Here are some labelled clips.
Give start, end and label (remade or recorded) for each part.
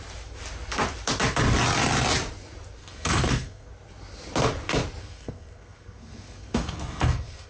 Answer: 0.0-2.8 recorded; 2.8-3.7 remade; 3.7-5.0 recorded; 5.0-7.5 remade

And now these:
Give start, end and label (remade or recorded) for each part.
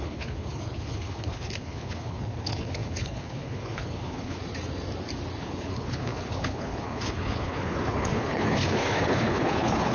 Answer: 0.0-4.4 remade; 4.4-5.4 recorded; 5.4-9.9 remade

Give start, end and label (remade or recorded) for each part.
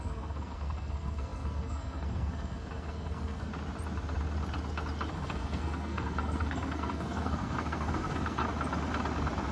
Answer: 0.0-3.5 remade; 3.5-5.1 recorded; 5.1-8.4 remade; 8.4-9.5 recorded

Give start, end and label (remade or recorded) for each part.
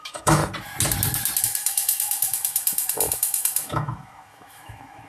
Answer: 0.0-0.4 remade; 0.4-1.4 recorded; 1.4-5.1 remade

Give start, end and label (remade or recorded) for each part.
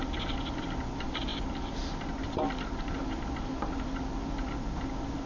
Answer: 0.0-5.3 recorded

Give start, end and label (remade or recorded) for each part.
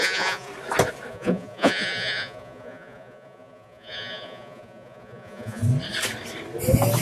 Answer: 0.0-0.5 remade; 0.5-1.1 recorded; 1.1-5.6 remade; 5.6-7.0 recorded